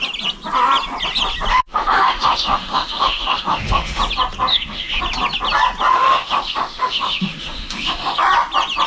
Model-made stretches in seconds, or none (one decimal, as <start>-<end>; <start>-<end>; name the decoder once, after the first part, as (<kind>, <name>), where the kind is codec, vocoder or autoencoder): 1.5-4.0 (autoencoder, DAC-VAE); 4.5-5.0; 5.9-8.2